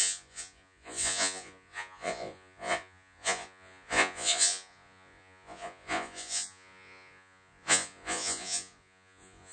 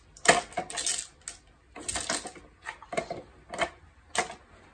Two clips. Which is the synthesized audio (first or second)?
first